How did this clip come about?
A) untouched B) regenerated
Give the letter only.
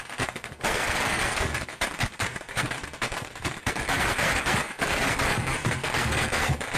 B